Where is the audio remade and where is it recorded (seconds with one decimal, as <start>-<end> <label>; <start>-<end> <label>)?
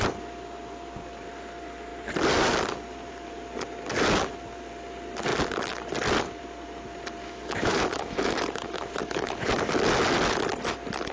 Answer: 0.0-7.2 recorded; 7.2-9.5 remade; 9.5-11.1 recorded